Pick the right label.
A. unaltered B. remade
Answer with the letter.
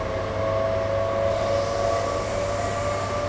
A